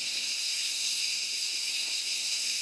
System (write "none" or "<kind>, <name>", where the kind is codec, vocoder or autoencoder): codec, SNAC